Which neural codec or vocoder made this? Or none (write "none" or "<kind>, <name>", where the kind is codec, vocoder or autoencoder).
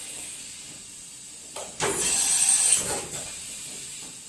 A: none